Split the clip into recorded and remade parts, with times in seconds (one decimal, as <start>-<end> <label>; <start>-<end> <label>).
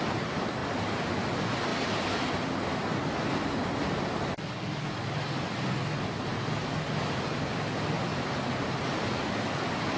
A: 0.0-10.0 recorded